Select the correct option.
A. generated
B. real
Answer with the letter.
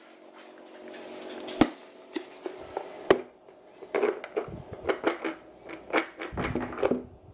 B